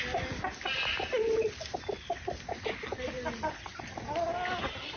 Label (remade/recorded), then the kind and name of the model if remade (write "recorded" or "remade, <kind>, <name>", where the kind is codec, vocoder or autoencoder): recorded